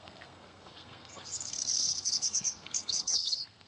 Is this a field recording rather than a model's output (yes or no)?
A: no